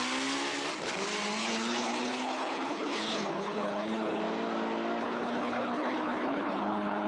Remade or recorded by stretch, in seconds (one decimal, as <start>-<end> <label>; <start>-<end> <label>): 0.0-1.4 recorded; 1.4-4.2 remade; 4.2-5.0 recorded; 5.0-7.1 remade